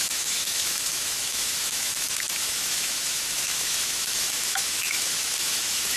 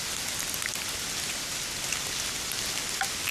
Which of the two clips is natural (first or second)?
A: second